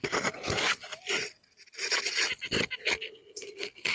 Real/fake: real